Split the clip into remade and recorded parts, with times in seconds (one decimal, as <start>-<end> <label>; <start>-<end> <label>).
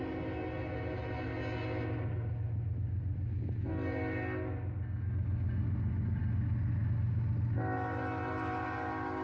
0.0-9.2 recorded